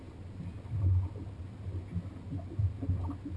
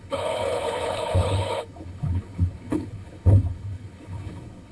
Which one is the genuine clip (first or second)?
first